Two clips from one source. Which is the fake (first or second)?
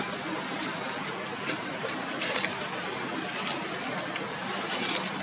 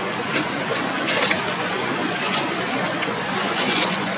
second